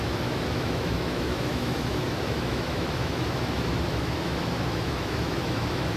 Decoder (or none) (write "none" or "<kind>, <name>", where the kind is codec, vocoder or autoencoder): autoencoder, DAC-VAE